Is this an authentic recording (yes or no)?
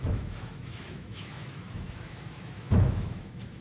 no